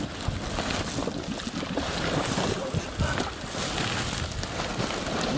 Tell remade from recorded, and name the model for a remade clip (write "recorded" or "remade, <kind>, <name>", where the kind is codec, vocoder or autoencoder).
recorded